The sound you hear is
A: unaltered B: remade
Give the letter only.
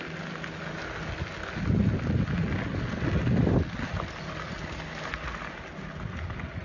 A